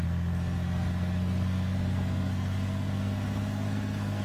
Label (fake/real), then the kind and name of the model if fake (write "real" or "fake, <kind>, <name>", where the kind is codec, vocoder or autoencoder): fake, codec, SNAC